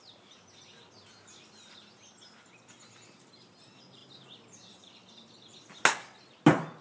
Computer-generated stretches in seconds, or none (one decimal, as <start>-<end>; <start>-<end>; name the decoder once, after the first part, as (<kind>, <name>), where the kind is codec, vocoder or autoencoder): none